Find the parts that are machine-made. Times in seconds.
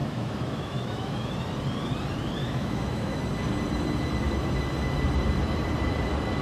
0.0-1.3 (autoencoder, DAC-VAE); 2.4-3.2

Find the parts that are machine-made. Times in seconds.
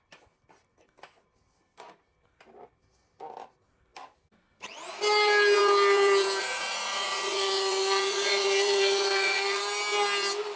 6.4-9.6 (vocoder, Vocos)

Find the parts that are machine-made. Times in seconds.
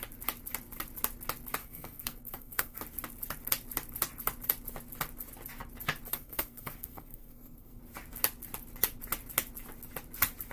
1.6-2.8 (codec, SNAC); 6.1-7.8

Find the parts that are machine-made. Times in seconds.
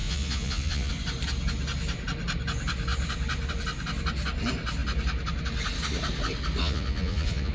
0.0-0.9 (vocoder, Vocos); 6.6-7.5